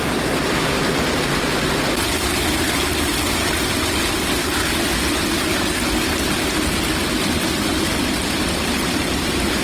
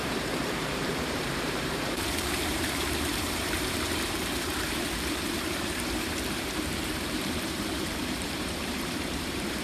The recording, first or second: first